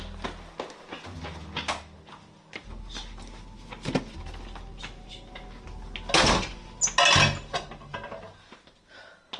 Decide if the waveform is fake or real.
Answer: real